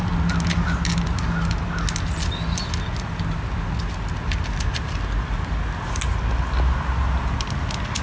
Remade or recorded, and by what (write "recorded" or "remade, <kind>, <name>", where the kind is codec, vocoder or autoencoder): recorded